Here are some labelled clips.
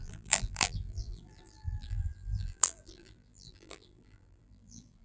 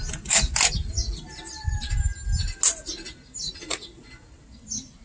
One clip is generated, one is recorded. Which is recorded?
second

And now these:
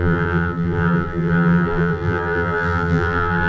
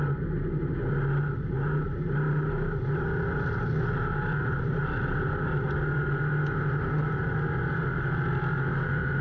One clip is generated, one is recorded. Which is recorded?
second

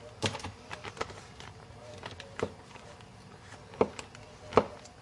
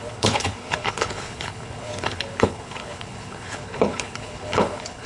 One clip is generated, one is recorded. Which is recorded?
first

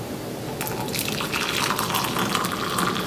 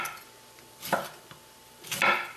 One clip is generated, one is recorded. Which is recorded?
first